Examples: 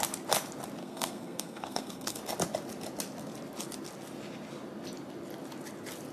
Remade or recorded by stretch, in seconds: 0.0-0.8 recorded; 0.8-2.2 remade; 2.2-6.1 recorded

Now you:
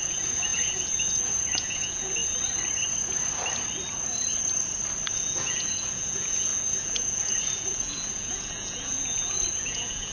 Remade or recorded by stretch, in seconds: 0.0-2.2 remade; 2.2-5.1 recorded; 5.1-10.1 remade